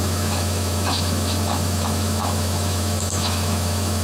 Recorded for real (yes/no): no